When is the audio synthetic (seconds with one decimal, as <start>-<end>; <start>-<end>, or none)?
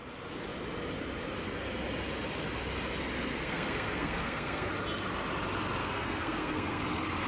3.3-4.7; 5.8-6.8